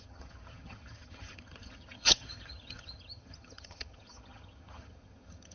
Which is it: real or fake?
fake